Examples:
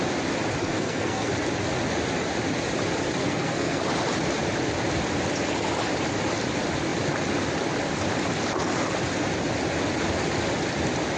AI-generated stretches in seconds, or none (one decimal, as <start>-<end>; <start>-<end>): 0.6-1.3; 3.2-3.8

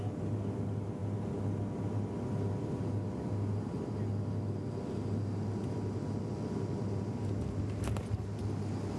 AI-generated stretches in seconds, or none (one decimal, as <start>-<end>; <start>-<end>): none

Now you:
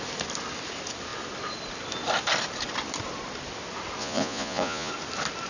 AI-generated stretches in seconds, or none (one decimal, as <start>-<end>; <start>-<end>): 4.0-4.9